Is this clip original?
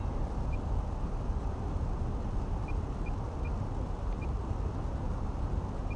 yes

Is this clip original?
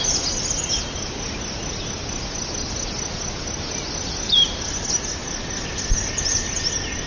yes